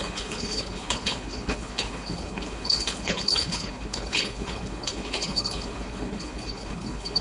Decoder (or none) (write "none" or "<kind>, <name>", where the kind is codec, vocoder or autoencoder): codec, HILCodec